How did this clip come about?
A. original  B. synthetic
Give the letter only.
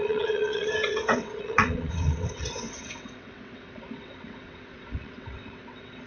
B